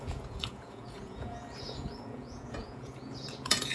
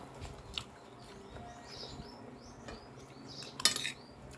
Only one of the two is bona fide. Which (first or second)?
second